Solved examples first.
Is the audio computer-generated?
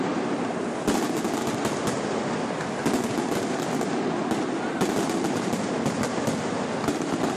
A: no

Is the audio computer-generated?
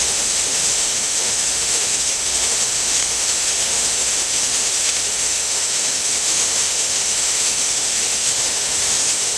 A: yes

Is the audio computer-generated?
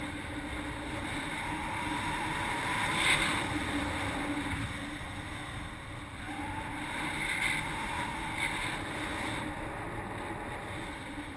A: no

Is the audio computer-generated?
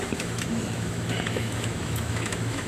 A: yes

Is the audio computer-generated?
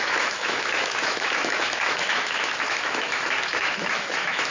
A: yes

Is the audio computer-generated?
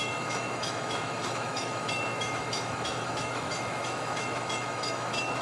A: yes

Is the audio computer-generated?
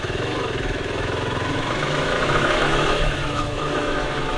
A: yes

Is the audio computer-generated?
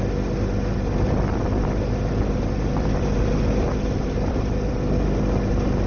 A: no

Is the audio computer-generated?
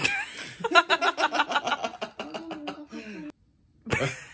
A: no